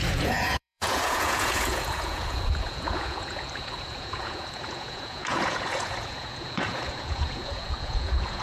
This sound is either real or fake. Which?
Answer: fake